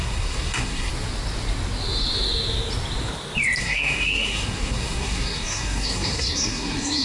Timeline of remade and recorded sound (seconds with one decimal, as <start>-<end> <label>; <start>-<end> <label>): 0.0-0.9 remade; 0.9-3.6 recorded; 3.6-7.0 remade